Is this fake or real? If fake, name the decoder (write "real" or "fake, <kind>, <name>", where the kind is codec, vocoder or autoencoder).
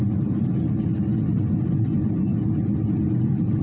real